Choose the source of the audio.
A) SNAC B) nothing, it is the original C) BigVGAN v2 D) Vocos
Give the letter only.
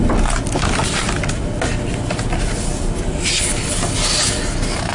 B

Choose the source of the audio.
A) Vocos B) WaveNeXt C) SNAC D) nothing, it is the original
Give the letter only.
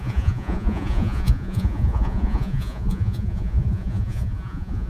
A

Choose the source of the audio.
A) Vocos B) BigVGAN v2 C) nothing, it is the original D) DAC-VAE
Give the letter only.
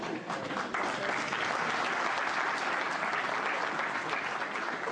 C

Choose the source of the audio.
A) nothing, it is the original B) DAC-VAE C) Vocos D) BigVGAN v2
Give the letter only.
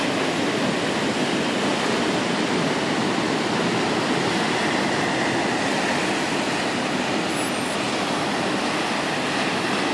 A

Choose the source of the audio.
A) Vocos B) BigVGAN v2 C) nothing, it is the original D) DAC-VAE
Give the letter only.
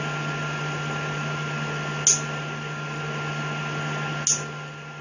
C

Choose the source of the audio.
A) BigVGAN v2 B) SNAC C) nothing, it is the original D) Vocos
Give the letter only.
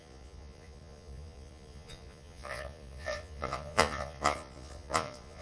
D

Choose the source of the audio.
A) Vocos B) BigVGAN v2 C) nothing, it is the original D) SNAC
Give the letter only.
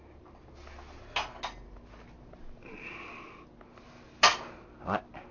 C